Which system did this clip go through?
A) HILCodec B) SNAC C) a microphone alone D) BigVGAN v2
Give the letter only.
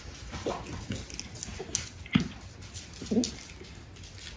C